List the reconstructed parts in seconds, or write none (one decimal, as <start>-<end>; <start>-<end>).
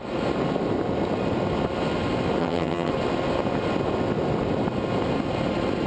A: 2.4-2.9